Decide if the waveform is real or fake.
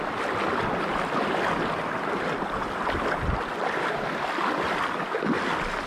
real